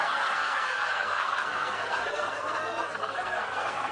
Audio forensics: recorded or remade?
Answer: remade